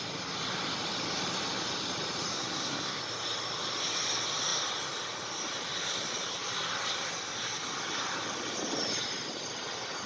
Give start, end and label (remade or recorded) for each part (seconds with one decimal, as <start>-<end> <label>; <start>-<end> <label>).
0.0-2.3 recorded; 2.3-3.0 remade; 3.0-10.1 recorded